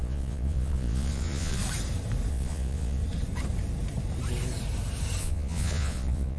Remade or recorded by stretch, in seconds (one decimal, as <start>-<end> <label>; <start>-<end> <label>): 0.0-1.6 remade; 1.6-2.3 recorded; 2.3-3.0 remade; 3.0-5.2 recorded; 5.2-6.4 remade